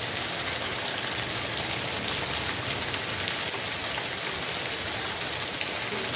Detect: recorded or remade recorded